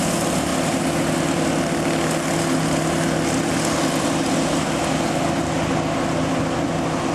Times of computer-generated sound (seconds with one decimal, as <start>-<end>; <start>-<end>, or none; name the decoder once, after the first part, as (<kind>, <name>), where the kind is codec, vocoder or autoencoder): none